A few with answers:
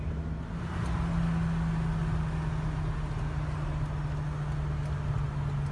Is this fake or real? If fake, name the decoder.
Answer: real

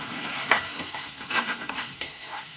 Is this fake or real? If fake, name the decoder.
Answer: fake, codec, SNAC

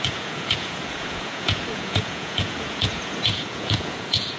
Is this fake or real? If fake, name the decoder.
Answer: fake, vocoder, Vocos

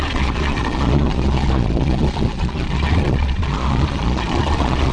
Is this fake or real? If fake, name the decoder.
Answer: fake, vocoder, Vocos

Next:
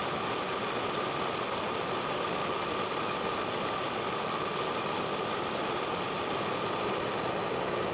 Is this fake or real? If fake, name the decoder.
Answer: real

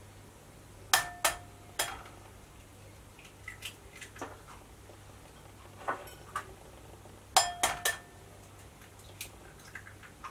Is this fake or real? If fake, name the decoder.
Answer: real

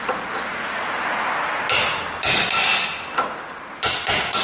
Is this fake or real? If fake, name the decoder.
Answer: real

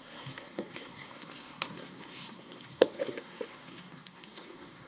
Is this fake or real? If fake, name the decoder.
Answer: fake, codec, SNAC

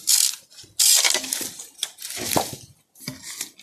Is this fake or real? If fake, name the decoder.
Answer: real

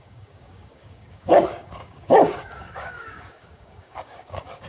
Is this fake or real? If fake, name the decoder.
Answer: fake, codec, DAC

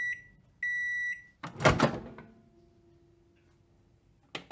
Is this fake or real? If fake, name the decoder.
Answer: real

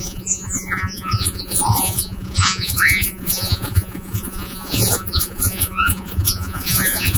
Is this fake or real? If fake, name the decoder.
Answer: fake, vocoder, Vocos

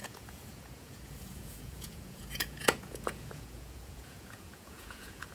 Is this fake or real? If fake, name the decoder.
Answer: fake, vocoder, Vocos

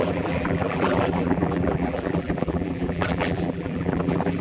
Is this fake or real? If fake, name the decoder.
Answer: fake, vocoder, BigVGAN v2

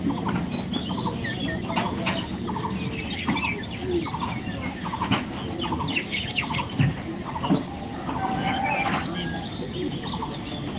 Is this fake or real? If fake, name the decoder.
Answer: real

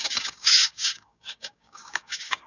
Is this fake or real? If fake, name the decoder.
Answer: fake, codec, DAC